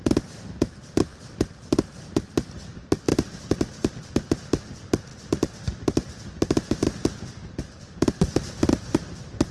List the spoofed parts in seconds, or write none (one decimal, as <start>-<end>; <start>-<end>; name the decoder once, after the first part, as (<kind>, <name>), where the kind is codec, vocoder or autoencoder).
3.1-3.9 (vocoder, BigVGAN v2); 5.1-7.6